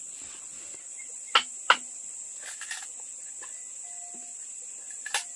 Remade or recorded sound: recorded